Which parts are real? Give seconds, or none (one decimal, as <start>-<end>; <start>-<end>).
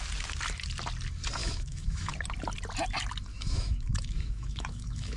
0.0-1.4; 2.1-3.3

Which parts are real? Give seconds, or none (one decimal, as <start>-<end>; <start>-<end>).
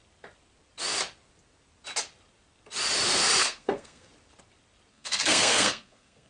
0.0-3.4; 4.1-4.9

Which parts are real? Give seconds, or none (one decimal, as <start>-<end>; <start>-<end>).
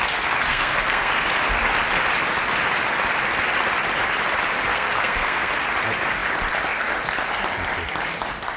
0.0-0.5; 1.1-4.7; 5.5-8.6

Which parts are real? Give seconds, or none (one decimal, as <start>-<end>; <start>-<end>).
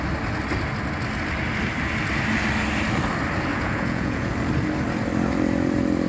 0.0-3.5; 4.3-6.1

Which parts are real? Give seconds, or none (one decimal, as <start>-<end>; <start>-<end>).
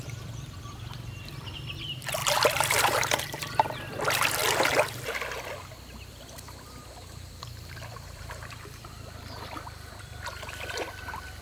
4.4-6.1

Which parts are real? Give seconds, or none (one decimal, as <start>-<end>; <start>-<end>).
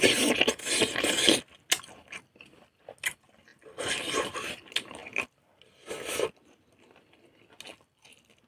0.0-5.0; 5.9-8.5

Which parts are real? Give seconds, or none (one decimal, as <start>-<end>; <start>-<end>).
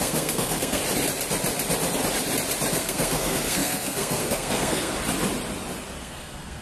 0.8-2.7; 4.9-6.0